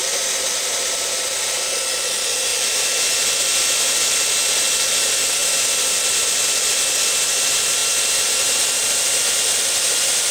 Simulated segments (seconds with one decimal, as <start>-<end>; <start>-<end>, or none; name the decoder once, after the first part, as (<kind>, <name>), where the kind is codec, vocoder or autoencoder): 0.0-1.2 (vocoder, BigVGAN v2)